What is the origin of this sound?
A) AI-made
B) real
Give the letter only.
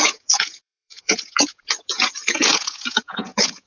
A